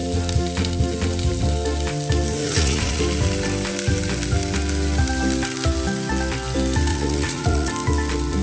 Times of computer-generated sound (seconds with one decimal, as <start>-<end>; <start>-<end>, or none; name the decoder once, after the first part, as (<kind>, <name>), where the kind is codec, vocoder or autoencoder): 2.4-3.0 (vocoder, Vocos); 6.9-7.7